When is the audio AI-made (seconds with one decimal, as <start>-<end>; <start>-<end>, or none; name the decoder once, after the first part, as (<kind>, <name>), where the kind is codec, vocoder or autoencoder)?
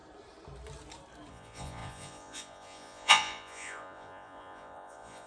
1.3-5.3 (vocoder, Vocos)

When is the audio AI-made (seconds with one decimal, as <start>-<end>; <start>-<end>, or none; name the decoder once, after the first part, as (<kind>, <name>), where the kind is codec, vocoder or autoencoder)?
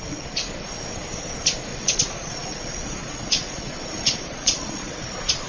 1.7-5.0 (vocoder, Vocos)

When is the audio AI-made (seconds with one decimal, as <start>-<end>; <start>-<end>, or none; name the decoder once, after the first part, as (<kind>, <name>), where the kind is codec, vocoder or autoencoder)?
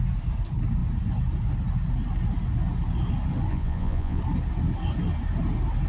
3.5-4.2 (vocoder, Vocos)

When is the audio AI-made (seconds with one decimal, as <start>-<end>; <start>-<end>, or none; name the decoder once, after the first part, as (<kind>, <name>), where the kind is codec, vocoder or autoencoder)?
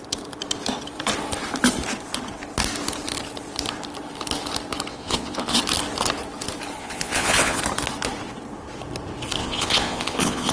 4.9-5.6 (vocoder, Vocos); 6.8-7.6; 9.4-10.5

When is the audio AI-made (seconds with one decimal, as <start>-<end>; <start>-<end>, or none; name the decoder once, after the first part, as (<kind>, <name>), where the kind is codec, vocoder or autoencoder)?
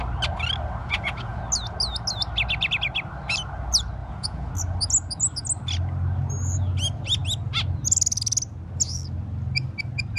0.8-1.4 (vocoder, Vocos); 4.0-4.5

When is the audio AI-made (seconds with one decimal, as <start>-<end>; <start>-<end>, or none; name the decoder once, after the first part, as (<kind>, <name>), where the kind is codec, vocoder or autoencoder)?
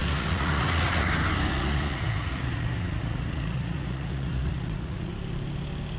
0.0-1.1 (vocoder, Vocos); 1.5-5.1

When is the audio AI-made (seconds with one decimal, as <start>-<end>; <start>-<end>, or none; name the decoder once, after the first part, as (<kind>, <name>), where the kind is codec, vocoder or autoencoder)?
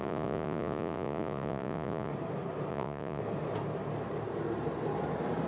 0.0-2.1 (vocoder, Vocos); 2.7-3.2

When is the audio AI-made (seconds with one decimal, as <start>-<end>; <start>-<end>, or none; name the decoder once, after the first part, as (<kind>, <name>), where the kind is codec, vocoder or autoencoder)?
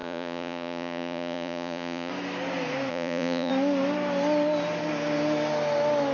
0.0-2.1 (vocoder, Vocos); 2.9-3.5